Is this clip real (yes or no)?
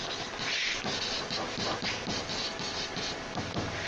yes